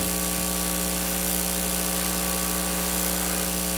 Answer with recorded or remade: recorded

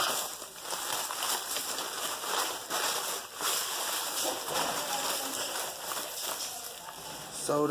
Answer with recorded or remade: recorded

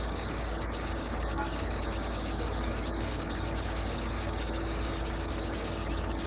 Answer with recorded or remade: remade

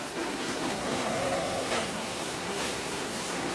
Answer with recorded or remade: remade